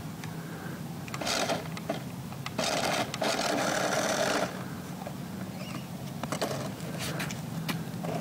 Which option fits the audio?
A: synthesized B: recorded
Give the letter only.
B